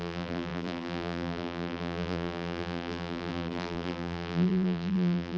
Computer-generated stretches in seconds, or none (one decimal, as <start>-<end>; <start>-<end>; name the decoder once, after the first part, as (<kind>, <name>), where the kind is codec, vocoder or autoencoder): 0.0-5.4 (vocoder, BigVGAN v2)